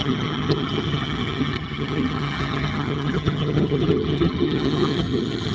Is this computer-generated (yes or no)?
yes